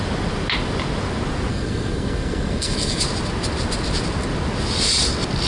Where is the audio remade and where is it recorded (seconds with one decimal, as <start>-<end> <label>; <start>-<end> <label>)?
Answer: 0.0-1.5 recorded; 1.5-3.0 remade; 3.0-5.5 recorded